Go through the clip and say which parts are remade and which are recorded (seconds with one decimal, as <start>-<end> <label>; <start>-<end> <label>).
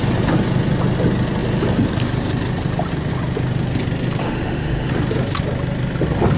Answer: 0.0-4.2 recorded; 4.2-4.9 remade; 4.9-6.4 recorded